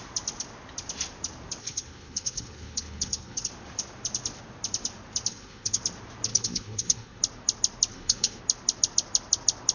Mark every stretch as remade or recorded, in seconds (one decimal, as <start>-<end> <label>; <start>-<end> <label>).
0.0-1.6 recorded; 1.6-3.5 remade; 3.5-5.3 recorded; 5.3-5.8 remade; 5.8-6.3 recorded; 6.3-7.2 remade; 7.2-7.9 recorded; 7.9-8.4 remade; 8.4-9.7 recorded